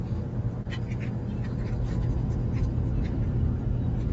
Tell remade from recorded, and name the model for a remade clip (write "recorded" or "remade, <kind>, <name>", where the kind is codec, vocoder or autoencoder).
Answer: recorded